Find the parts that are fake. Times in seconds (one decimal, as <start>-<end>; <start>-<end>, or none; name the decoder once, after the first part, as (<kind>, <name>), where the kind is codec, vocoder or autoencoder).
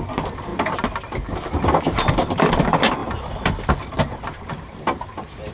none